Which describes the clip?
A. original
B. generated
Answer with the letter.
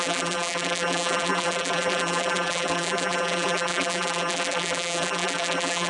B